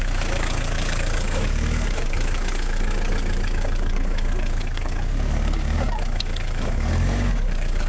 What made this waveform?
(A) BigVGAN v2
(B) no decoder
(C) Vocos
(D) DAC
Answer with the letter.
D